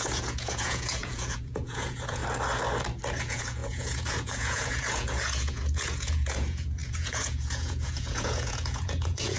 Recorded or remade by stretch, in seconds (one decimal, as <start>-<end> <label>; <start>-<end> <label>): 0.0-2.2 remade; 2.2-3.2 recorded; 3.2-9.4 remade